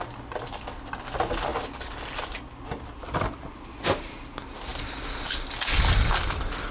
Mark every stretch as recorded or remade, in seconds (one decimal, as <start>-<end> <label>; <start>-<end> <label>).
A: 0.0-1.5 recorded; 1.5-3.7 remade; 3.7-4.7 recorded; 4.7-5.3 remade; 5.3-6.7 recorded